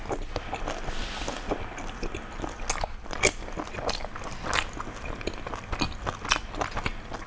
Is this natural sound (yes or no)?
yes